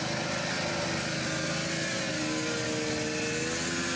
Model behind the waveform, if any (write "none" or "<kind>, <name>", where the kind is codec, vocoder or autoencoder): none